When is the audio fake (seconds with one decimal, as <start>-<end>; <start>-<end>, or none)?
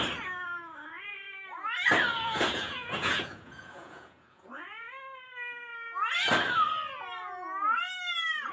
2.1-4.5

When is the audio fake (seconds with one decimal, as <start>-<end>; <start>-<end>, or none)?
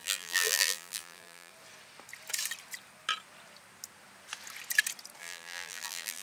0.0-1.5; 5.2-6.2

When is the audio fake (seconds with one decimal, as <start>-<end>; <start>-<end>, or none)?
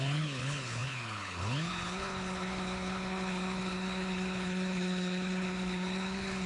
0.0-6.5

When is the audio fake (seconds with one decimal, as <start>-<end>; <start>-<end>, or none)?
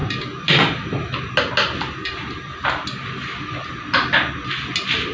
none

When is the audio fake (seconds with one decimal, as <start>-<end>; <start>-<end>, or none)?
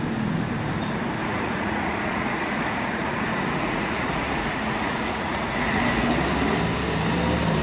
1.2-5.8